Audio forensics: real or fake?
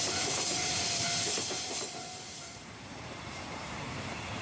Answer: fake